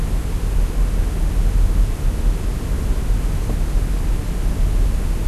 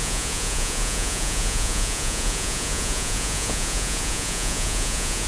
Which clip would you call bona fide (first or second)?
first